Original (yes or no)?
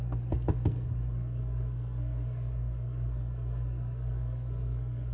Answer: no